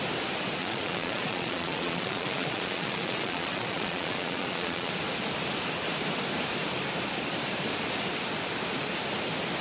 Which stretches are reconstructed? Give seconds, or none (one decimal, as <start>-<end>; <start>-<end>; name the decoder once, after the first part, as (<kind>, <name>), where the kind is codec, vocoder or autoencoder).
0.6-4.9 (vocoder, Vocos)

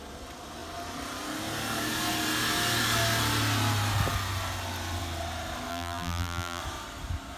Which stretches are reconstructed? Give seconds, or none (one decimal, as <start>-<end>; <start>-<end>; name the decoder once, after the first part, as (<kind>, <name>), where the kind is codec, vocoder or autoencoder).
5.7-6.6 (vocoder, BigVGAN v2)

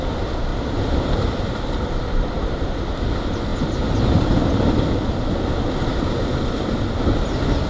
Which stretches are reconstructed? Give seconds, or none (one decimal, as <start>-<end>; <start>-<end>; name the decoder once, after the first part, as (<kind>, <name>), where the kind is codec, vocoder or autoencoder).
0.5-2.0 (vocoder, BigVGAN v2); 3.5-7.7

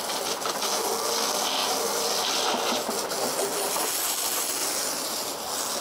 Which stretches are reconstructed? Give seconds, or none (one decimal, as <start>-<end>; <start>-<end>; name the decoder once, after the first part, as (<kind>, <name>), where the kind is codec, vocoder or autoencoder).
1.6-2.9 (vocoder, BigVGAN v2); 4.6-5.3

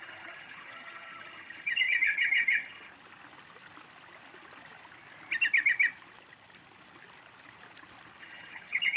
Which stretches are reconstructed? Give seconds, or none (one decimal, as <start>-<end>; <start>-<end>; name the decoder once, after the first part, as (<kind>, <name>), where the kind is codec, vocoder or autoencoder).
0.0-2.9 (vocoder, HiFi-GAN); 8.2-9.0